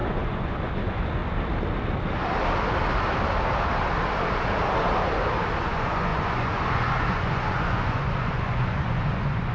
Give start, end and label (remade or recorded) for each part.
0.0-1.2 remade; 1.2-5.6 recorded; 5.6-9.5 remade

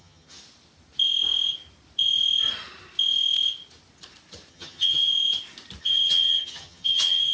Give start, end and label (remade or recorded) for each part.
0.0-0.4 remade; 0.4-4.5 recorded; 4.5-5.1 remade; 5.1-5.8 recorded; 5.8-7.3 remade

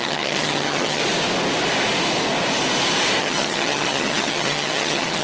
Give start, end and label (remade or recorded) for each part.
0.0-1.0 remade; 1.0-3.2 recorded; 3.2-5.2 remade

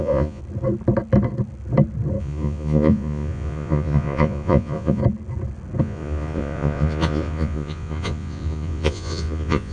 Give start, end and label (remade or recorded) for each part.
0.0-0.4 remade; 0.4-2.2 recorded; 2.2-5.0 remade; 5.0-5.8 recorded; 5.8-9.7 remade